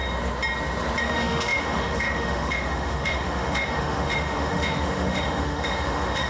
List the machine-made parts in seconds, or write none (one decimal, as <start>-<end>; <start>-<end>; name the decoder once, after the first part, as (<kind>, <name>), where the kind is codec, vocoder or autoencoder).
1.0-6.3 (autoencoder, DAC-VAE)